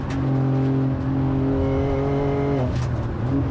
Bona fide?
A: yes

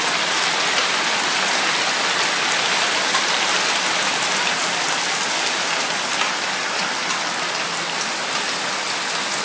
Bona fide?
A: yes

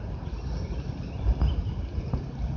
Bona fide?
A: yes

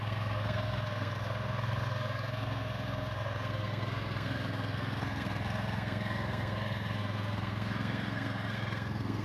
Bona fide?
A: no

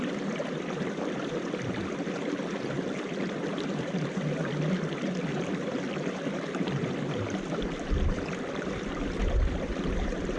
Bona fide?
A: no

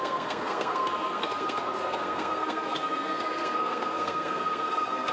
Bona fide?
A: no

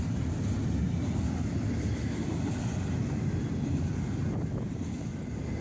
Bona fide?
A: yes